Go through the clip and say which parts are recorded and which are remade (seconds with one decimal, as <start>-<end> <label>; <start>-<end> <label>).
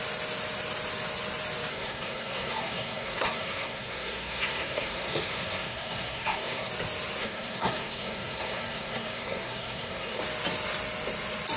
0.0-1.7 recorded; 1.7-6.7 remade; 6.7-7.2 recorded; 7.2-10.2 remade; 10.2-11.6 recorded